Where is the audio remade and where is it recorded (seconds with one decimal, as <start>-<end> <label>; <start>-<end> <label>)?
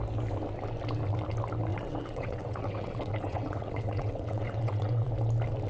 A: 0.0-1.7 recorded; 1.7-5.1 remade; 5.1-5.7 recorded